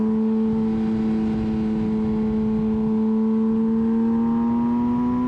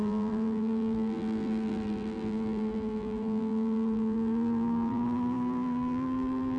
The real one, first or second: first